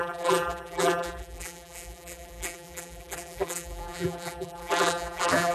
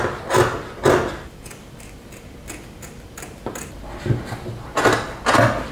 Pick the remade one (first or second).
first